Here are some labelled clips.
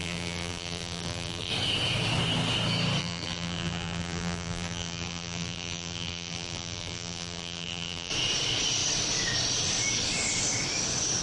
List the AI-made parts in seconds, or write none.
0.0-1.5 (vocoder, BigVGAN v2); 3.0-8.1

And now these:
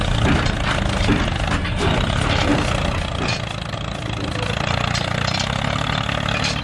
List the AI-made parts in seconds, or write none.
none